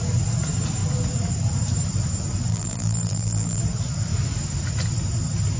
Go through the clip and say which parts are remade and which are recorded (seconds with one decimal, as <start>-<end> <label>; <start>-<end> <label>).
0.0-2.5 recorded; 2.5-3.6 remade; 3.6-5.6 recorded